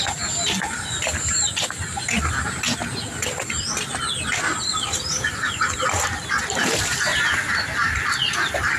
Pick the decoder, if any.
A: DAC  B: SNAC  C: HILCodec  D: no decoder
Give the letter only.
D